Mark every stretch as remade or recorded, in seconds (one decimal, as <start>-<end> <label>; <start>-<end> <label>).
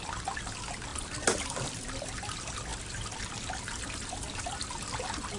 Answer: 0.0-5.4 recorded